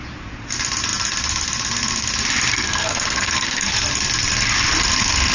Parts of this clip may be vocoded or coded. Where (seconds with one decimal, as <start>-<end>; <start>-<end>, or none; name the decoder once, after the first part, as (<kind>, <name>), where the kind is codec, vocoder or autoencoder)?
2.5-3.7 (codec, SNAC)